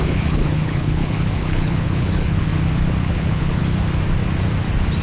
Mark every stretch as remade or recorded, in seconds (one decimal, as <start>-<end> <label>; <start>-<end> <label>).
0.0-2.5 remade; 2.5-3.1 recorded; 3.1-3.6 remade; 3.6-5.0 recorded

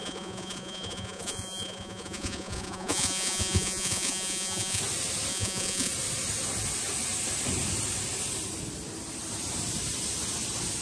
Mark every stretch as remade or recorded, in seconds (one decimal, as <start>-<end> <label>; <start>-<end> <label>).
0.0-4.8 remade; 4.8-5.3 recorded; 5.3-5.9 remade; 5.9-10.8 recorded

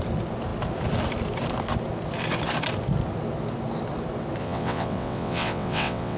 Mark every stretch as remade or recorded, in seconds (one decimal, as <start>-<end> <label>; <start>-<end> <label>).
0.0-4.4 recorded; 4.4-6.2 remade